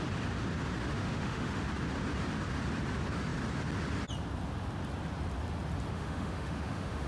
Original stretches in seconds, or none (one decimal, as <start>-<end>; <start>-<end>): 0.0-0.8; 1.7-5.9